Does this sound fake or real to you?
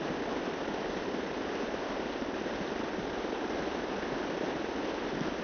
real